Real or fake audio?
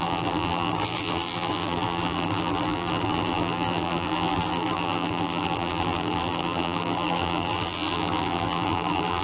fake